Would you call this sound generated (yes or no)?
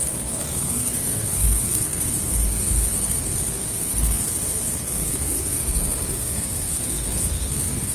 yes